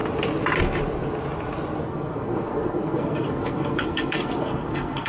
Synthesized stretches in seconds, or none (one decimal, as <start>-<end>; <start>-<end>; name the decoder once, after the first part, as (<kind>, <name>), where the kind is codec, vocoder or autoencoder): 1.8-5.1 (codec, SNAC)